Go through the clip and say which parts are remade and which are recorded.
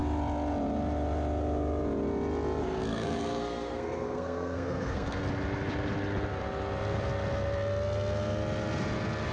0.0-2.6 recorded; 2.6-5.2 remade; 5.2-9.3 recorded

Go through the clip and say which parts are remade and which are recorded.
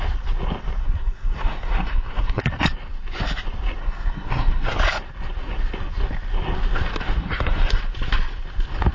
0.0-0.8 recorded; 0.8-2.4 remade; 2.4-3.8 recorded; 3.8-4.8 remade; 4.8-7.2 recorded; 7.2-7.8 remade; 7.8-8.9 recorded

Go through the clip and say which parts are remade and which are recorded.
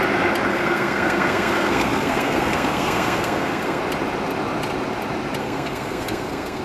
0.0-0.5 recorded; 0.5-3.8 remade; 3.8-5.4 recorded; 5.4-6.6 remade